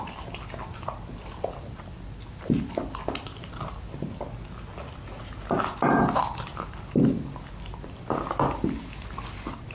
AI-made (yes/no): no